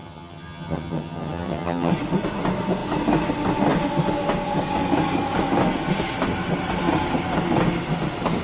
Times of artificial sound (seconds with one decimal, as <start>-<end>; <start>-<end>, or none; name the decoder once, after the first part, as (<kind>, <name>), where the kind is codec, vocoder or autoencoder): 0.0-1.9 (vocoder, HiFi-GAN)